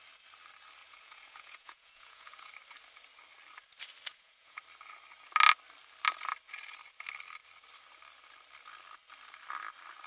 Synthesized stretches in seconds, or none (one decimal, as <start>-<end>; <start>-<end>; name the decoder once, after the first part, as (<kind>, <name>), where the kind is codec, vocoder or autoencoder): 0.8-2.5 (vocoder, Vocos); 4.1-4.6